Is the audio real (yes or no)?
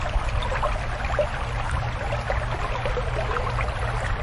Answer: yes